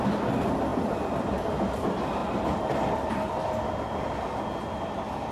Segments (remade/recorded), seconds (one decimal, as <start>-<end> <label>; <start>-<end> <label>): 0.0-0.7 recorded; 0.7-1.4 remade; 1.4-5.3 recorded